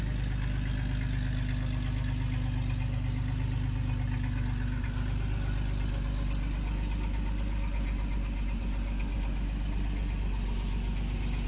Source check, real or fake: real